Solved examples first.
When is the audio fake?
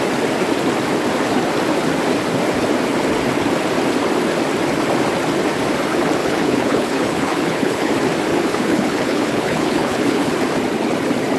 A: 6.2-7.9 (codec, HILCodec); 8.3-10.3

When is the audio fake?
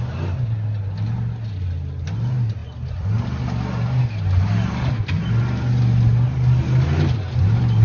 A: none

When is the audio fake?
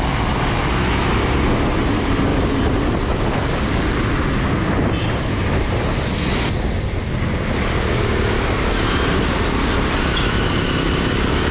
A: none